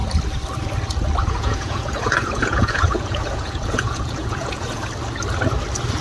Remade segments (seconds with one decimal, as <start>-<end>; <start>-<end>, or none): 1.2-4.8